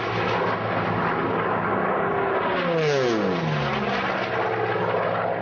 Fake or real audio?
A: real